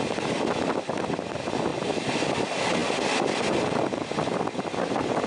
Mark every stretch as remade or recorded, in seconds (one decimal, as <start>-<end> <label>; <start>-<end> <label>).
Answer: 0.0-2.8 recorded; 2.8-3.5 remade; 3.5-5.3 recorded